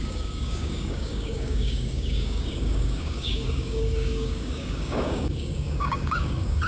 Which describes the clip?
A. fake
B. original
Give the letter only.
A